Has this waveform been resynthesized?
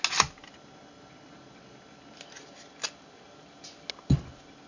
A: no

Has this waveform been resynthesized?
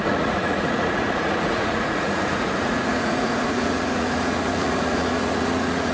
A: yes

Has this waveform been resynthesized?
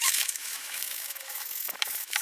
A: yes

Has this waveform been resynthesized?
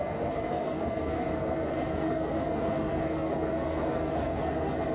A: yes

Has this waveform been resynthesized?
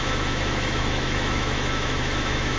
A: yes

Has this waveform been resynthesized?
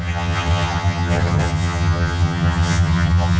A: yes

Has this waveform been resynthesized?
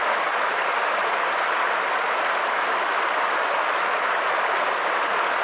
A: no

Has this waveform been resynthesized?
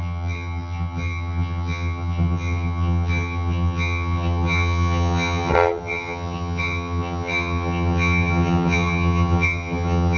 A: yes